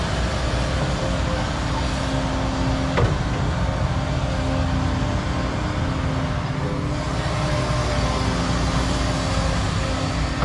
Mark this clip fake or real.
real